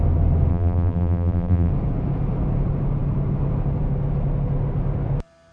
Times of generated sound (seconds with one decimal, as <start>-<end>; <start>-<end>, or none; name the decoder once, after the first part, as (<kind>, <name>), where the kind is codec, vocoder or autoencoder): 0.5-1.7 (vocoder, BigVGAN v2)